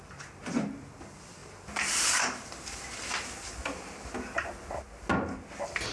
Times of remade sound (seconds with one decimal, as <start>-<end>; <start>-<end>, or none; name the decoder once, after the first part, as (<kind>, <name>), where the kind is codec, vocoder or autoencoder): 1.4-3.0 (vocoder, BigVGAN v2)